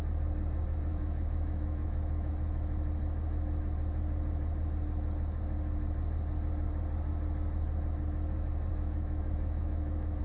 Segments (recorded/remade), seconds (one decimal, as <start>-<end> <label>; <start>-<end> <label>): 0.0-0.9 recorded; 0.9-2.3 remade; 2.3-8.7 recorded; 8.7-10.2 remade